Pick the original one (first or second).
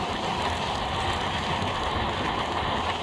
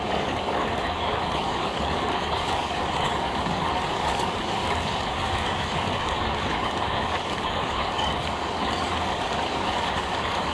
first